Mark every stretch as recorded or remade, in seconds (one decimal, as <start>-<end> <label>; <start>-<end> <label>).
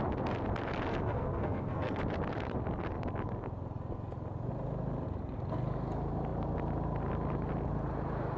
0.0-0.9 recorded; 0.9-2.0 remade; 2.0-8.4 recorded